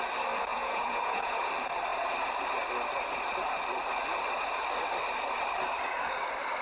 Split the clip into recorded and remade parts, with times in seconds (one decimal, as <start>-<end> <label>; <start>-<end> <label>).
0.0-0.5 recorded; 0.5-1.5 remade; 1.5-6.6 recorded